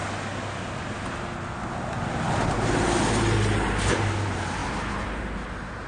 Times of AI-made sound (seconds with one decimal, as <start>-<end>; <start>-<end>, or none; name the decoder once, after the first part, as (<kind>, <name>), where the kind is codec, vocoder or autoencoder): none